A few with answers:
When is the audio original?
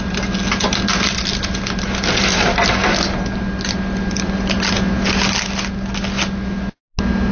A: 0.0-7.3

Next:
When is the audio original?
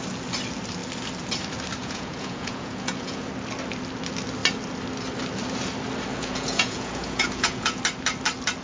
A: 0.0-1.8; 3.3-6.1; 7.8-8.6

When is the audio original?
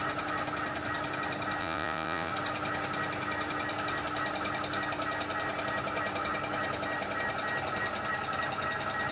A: 0.0-1.6; 2.3-9.1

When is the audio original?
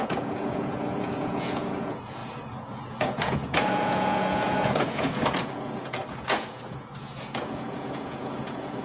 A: none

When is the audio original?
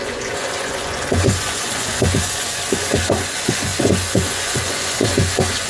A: none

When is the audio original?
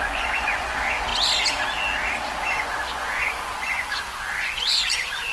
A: 1.1-2.4